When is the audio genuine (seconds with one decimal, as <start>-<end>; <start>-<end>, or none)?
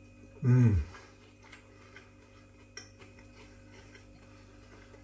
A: 0.0-5.0